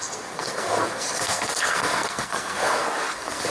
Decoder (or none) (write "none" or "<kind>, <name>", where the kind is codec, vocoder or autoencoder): codec, SNAC